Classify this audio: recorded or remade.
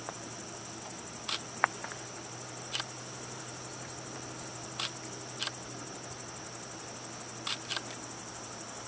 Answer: recorded